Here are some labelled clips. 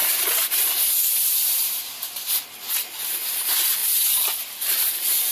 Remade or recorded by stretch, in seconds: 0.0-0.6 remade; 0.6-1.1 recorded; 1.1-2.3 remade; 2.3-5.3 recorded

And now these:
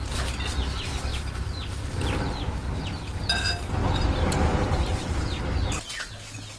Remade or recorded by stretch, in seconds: 0.0-1.1 recorded; 1.1-1.7 remade; 1.7-3.8 recorded; 3.8-5.4 remade; 5.4-6.6 recorded